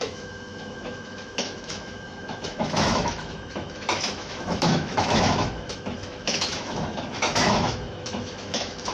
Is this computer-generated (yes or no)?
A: yes